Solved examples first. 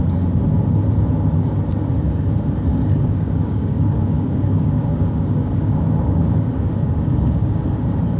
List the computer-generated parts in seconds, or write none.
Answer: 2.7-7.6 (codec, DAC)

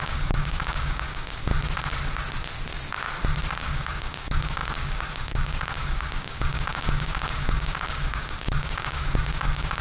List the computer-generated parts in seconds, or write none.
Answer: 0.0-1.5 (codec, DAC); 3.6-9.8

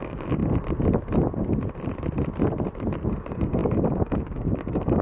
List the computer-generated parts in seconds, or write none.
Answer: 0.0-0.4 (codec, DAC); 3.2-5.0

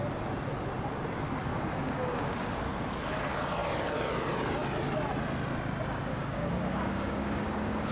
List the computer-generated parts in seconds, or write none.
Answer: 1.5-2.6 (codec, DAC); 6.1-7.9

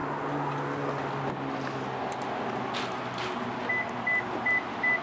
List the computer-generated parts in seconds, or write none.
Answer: none

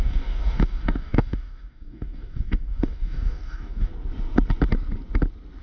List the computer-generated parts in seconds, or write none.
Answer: 0.0-3.9 (codec, DAC)